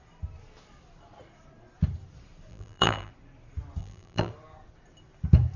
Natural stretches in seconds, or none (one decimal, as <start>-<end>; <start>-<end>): 0.0-2.5; 3.1-3.8; 4.3-5.6